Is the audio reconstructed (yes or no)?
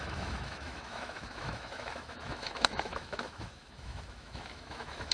yes